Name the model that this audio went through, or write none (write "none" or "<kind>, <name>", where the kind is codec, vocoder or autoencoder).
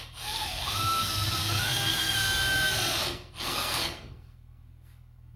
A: codec, SNAC